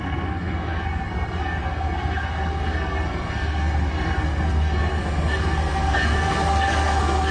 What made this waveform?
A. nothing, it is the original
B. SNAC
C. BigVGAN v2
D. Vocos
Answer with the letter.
B